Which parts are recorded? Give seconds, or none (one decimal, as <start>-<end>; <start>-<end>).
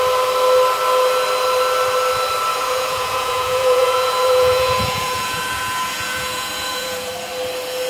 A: 0.0-2.5; 7.1-7.9